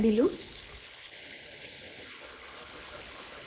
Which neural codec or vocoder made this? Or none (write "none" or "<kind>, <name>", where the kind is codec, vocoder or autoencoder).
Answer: codec, HILCodec